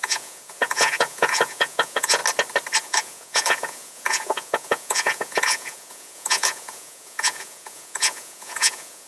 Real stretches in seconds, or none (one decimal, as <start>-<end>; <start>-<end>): 2.2-2.8